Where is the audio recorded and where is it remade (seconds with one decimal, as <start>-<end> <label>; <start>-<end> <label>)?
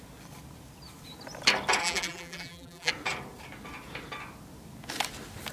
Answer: 0.0-1.8 recorded; 1.8-2.9 remade; 2.9-5.5 recorded